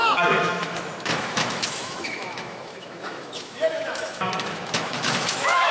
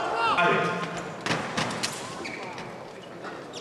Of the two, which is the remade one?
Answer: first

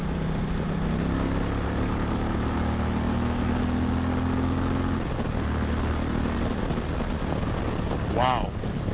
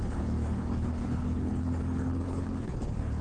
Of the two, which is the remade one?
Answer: second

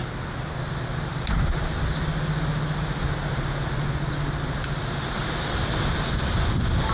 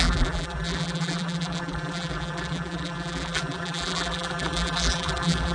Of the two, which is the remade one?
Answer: second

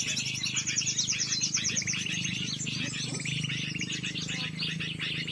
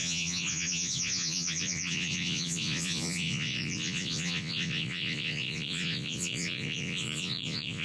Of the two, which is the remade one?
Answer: second